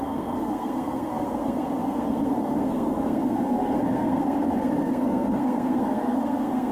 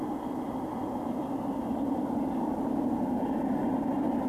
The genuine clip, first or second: second